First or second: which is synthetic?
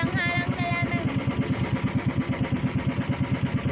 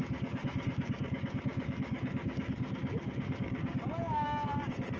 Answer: second